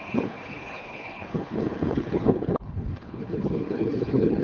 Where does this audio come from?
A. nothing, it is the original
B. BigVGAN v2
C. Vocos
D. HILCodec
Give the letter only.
D